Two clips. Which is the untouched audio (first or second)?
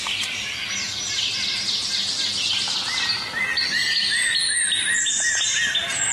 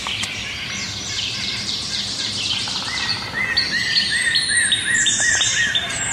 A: first